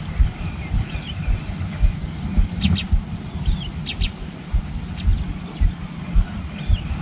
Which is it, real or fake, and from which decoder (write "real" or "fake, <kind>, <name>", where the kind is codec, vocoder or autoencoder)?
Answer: real